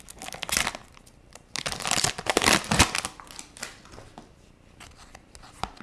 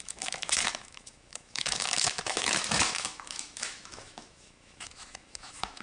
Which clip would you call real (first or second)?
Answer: first